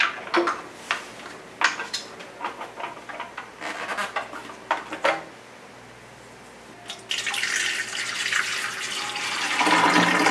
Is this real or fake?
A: real